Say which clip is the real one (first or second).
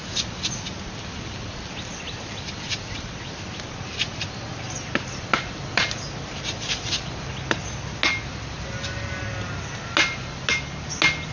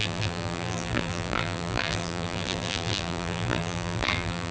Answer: first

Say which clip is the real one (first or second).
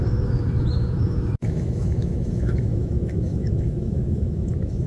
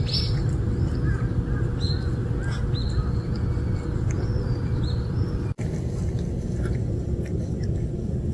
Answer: second